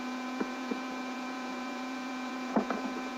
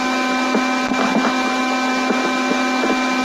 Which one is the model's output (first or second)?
first